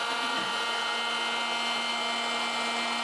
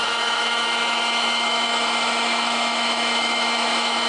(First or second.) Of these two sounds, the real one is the first